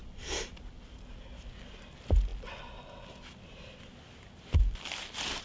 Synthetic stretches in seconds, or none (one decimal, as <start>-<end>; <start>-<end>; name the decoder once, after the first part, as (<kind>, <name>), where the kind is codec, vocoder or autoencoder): none